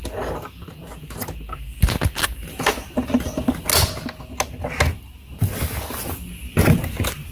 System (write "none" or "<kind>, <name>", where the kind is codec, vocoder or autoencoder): none